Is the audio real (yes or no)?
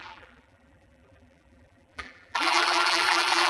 no